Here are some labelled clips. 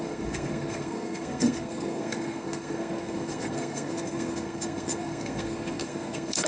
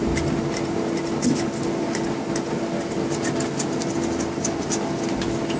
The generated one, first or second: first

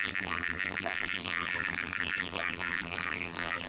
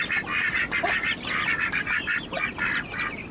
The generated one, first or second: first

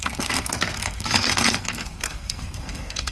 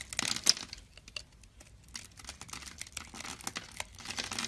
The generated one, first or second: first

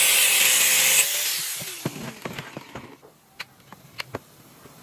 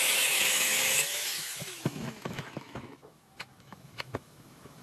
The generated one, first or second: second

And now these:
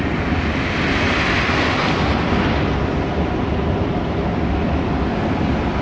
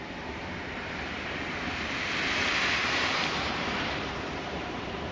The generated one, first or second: second